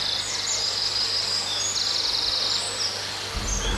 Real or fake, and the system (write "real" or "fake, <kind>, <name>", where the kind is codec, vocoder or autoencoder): real